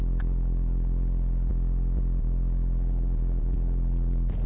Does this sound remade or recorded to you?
recorded